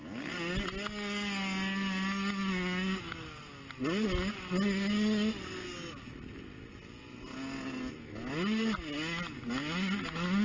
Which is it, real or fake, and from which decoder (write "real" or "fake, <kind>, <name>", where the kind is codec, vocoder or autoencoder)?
real